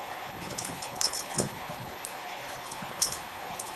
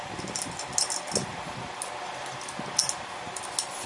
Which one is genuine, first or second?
second